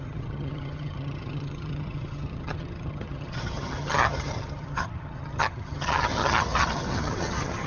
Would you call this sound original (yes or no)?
no